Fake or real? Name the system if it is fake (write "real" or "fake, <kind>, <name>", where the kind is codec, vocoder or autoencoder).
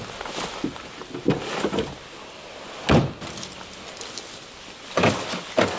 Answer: real